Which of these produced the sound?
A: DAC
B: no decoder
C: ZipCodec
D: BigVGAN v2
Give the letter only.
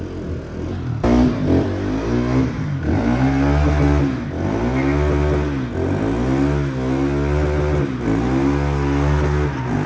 B